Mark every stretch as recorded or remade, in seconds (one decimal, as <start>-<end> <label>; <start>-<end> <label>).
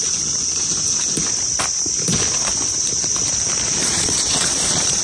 0.0-3.8 recorded; 3.8-5.0 remade